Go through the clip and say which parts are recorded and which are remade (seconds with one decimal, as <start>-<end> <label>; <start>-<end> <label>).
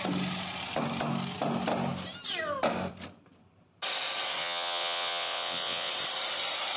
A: 0.0-4.4 recorded; 4.4-5.9 remade; 5.9-6.8 recorded